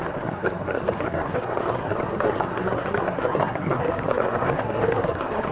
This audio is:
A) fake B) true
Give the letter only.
A